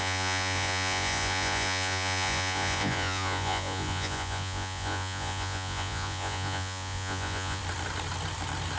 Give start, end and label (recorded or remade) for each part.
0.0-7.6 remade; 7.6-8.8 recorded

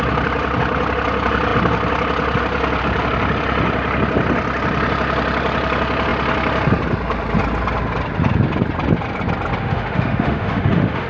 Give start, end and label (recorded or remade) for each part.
0.0-9.6 recorded; 9.6-11.1 remade

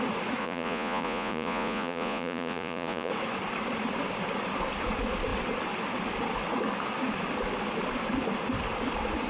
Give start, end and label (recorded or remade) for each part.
0.0-0.4 recorded; 0.4-3.1 remade; 3.1-9.3 recorded

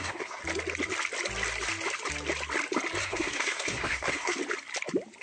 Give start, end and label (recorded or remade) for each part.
0.0-0.4 remade; 0.4-3.0 recorded; 3.0-4.4 remade; 4.4-5.2 recorded